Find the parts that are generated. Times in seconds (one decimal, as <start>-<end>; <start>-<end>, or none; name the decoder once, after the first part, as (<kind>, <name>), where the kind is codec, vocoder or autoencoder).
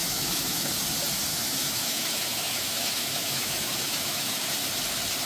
0.0-0.7 (autoencoder, DAC-VAE); 1.3-4.5